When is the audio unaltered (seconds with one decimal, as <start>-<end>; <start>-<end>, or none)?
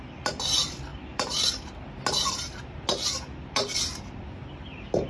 0.0-5.1